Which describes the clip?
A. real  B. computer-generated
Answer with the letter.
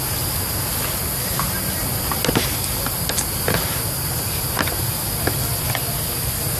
A